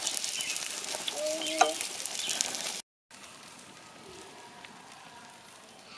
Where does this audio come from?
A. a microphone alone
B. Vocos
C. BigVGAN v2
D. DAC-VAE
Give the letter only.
A